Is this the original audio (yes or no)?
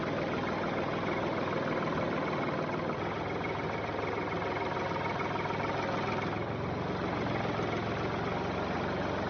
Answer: yes